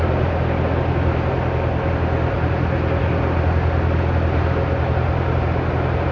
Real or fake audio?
real